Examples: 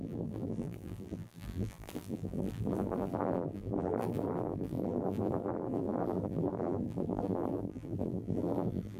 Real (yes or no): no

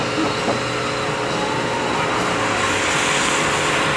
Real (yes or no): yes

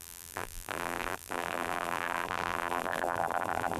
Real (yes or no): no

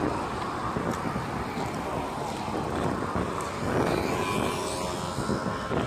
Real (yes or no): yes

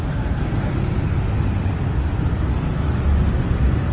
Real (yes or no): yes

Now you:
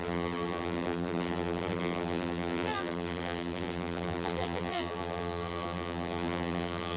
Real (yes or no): no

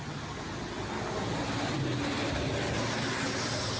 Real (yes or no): yes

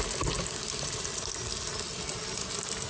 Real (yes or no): yes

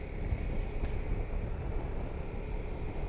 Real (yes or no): yes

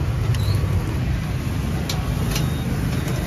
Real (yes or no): yes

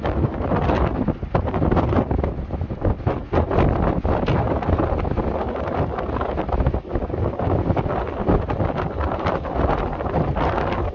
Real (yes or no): yes